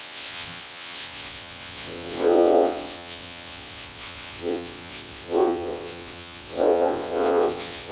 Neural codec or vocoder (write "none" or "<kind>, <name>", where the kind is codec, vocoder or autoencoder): vocoder, WaveNeXt